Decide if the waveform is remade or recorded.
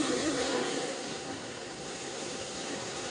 remade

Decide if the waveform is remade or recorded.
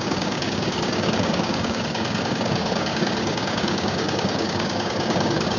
remade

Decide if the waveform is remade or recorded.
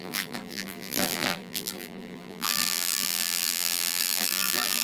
remade